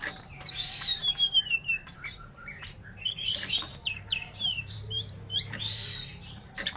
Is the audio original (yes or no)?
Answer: no